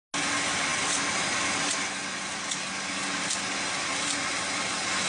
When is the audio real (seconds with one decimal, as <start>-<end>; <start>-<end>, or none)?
0.0-5.1